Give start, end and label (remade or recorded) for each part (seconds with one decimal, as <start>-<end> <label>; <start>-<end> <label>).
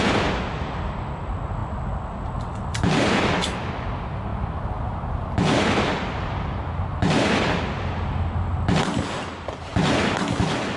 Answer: 0.0-10.8 recorded